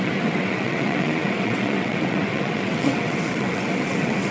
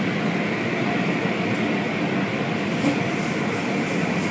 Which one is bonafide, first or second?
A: second